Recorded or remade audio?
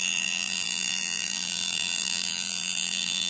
remade